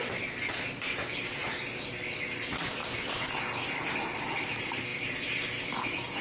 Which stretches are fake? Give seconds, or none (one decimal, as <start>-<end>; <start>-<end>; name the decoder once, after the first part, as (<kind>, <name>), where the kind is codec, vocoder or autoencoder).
none